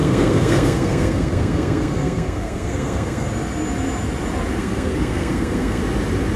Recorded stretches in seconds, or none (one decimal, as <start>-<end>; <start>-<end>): 3.3-4.6; 5.8-6.4